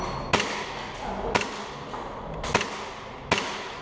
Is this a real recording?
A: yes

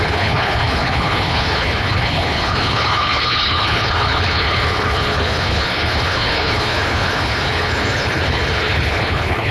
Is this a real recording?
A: no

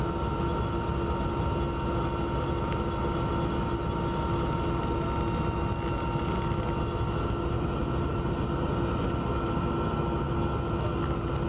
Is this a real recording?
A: yes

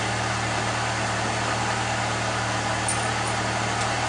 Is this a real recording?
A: yes